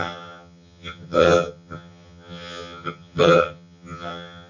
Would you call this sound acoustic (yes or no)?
no